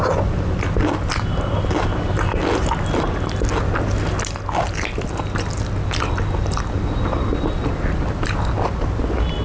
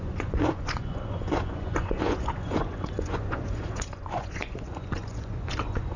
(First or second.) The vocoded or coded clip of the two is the second